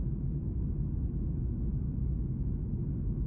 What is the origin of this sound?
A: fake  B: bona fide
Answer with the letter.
A